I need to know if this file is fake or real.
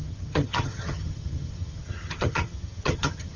fake